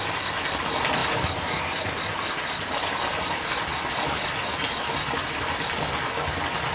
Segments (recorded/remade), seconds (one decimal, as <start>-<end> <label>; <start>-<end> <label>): 0.0-6.7 recorded

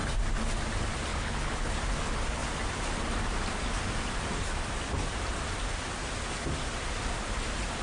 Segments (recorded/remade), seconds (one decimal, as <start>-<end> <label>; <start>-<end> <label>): 0.0-1.1 recorded; 1.1-1.7 remade; 1.7-7.8 recorded

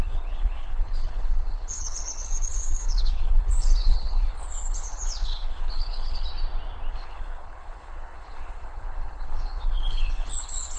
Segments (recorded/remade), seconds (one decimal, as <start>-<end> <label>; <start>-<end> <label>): 0.0-6.3 remade; 6.3-6.9 recorded; 6.9-10.8 remade

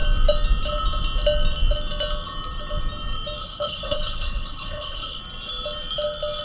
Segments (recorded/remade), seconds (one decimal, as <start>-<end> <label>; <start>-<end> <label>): 0.0-3.4 recorded; 3.4-5.2 remade; 5.2-6.4 recorded

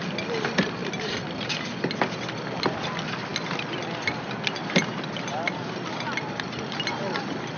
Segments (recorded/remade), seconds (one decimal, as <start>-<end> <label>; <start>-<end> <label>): 0.0-7.6 recorded